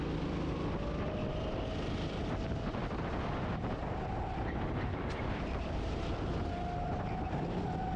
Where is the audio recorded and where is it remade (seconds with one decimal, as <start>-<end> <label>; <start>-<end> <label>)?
0.0-3.8 recorded; 3.8-6.0 remade; 6.0-8.0 recorded